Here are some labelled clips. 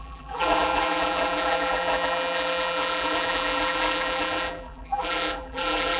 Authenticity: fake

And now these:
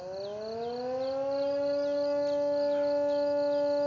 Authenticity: real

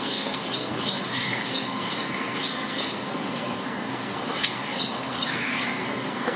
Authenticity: fake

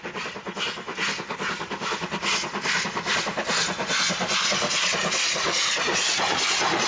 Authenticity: real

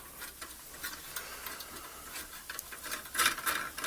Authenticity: real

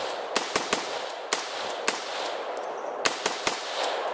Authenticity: real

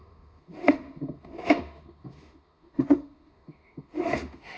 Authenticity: fake